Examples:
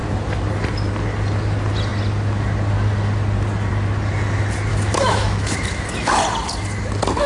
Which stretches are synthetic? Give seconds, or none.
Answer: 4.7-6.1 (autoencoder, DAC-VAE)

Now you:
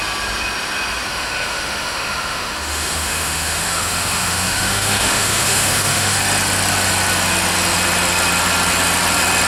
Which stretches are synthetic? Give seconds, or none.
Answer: 1.1-6.2 (autoencoder, DAC-VAE)

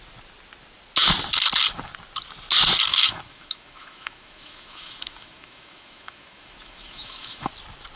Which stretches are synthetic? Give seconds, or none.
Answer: 2.9-7.5 (autoencoder, DAC-VAE)

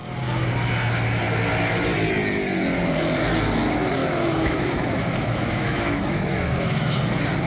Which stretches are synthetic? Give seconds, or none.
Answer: 4.0-7.0 (autoencoder, DAC-VAE)

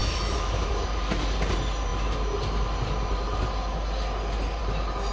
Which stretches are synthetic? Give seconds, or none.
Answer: 0.0-0.7 (autoencoder, DAC-VAE)

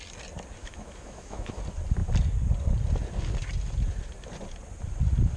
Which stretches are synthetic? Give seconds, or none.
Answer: 0.6-1.5 (autoencoder, DAC-VAE)

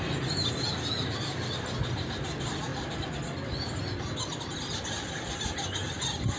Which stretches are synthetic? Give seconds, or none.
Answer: none

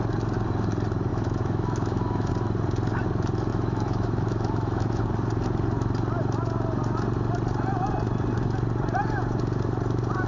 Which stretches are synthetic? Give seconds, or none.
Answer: 1.1-2.3 (autoencoder, DAC-VAE); 3.5-5.0